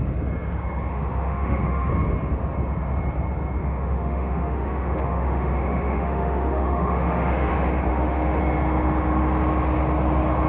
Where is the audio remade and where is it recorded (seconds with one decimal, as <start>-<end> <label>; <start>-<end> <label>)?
0.0-0.9 recorded; 0.9-1.9 remade; 1.9-3.6 recorded; 3.6-7.5 remade; 7.5-7.9 recorded; 7.9-8.4 remade; 8.4-10.5 recorded